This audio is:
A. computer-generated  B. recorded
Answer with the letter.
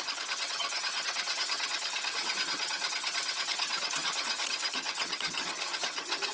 A